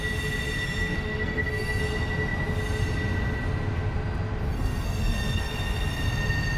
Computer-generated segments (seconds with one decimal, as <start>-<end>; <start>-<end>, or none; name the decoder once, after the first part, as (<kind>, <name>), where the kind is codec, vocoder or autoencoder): 0.8-1.8 (codec, SNAC); 4.5-5.5